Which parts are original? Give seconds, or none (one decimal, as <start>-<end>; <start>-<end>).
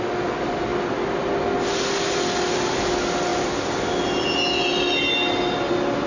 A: 0.0-6.1